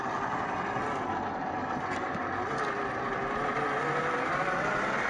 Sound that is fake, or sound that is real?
real